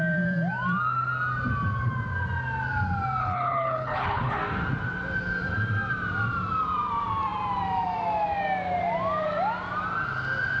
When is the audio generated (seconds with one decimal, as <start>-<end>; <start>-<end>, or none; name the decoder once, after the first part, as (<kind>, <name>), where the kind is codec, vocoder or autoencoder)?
3.2-4.4 (codec, HILCodec)